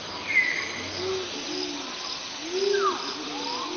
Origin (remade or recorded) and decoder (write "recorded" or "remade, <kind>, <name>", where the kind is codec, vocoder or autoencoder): recorded